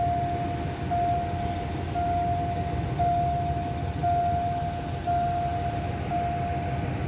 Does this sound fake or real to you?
real